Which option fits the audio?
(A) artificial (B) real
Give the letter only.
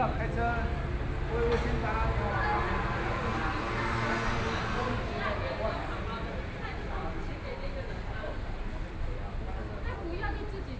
B